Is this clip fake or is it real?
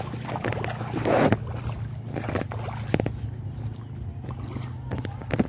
real